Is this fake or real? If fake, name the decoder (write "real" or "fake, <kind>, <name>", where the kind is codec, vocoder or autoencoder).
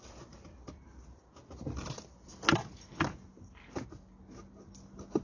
real